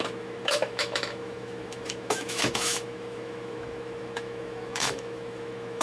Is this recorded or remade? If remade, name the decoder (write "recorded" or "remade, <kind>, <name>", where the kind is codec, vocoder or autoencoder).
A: remade, autoencoder, DAC-VAE